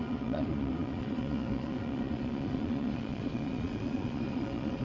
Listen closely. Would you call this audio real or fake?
fake